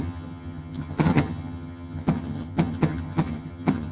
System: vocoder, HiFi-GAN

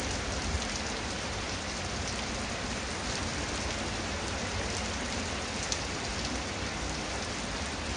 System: none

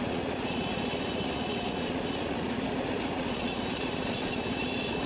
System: vocoder, Vocos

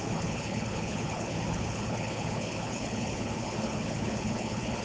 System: codec, HILCodec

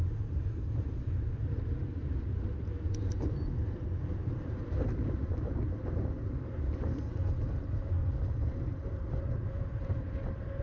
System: vocoder, BigVGAN v2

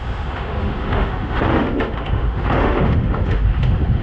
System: autoencoder, DAC-VAE